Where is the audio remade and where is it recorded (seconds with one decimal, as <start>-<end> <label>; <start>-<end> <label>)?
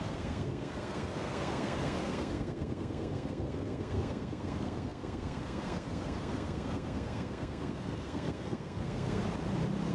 0.0-9.2 remade; 9.2-9.9 recorded